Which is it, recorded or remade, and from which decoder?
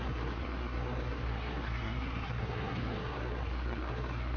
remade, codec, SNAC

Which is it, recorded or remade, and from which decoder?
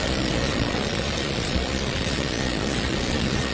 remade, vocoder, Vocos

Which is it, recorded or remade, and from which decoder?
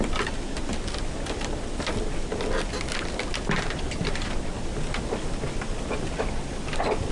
recorded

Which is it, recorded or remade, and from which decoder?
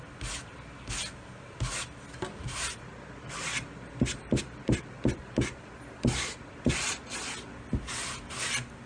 recorded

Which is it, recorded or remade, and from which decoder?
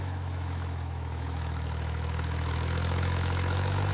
remade, autoencoder, DAC-VAE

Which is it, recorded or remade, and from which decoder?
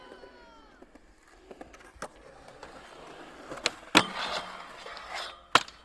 recorded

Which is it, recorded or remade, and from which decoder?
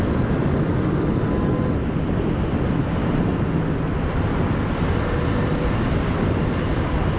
recorded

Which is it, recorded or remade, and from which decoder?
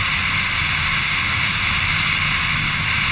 recorded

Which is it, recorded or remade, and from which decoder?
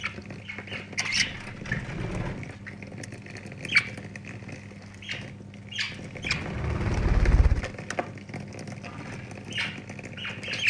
recorded